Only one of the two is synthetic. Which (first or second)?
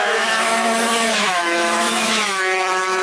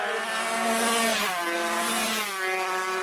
first